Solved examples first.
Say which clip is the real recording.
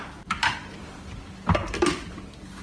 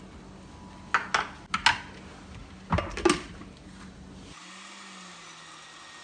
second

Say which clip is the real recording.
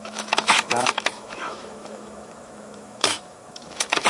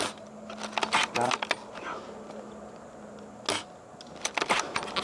second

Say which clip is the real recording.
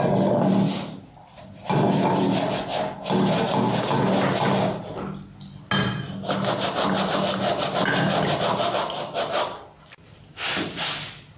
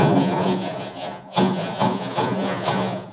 first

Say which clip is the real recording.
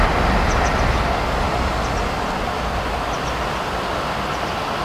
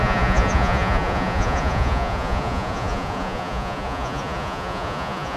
first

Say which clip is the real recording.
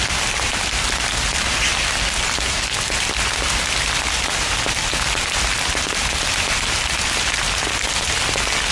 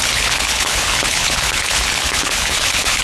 first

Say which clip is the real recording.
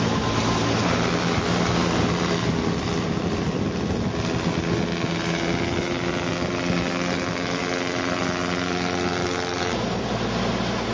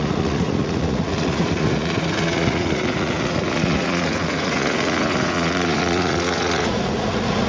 first